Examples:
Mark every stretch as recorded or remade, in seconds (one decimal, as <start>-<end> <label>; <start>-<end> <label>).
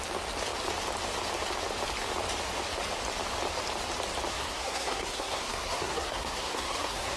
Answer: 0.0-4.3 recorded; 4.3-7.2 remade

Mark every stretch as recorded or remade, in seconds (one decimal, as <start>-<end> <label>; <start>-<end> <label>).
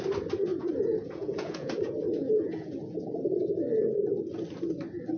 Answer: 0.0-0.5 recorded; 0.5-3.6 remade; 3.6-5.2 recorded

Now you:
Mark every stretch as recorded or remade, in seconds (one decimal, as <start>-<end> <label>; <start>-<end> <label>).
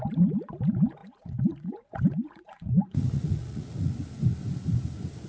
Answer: 0.0-1.0 recorded; 1.0-3.9 remade; 3.9-5.3 recorded